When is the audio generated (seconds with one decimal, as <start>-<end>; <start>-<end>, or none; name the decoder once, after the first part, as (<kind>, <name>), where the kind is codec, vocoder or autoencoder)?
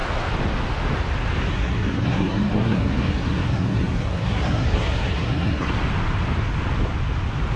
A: 1.5-5.7 (codec, SNAC)